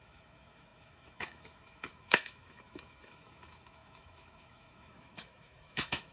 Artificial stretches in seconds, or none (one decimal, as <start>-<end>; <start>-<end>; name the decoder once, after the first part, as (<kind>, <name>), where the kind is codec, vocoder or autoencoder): 0.0-6.1 (autoencoder, DAC-VAE)

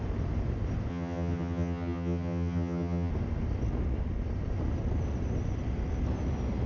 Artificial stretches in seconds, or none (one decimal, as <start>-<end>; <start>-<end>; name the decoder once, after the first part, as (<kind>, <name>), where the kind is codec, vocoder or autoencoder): 0.9-3.1 (vocoder, HiFi-GAN)

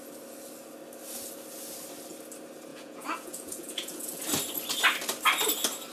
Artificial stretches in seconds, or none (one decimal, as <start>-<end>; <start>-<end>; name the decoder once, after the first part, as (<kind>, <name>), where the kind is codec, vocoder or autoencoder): 2.7-4.2 (vocoder, Vocos)

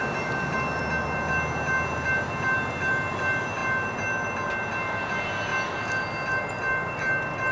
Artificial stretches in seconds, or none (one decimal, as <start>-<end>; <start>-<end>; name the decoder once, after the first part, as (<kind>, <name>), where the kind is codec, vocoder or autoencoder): none